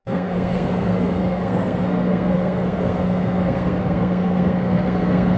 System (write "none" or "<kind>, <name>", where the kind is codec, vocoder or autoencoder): codec, SNAC